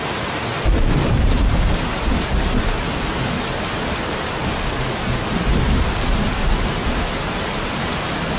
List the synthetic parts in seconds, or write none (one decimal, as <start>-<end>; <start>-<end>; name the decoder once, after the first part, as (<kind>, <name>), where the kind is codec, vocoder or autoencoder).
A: 1.0-1.6 (vocoder, BigVGAN v2)